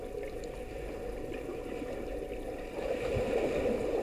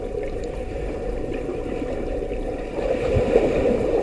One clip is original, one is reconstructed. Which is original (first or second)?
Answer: first